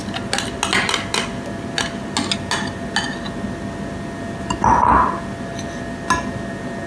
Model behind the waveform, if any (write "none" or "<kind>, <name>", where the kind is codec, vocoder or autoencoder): none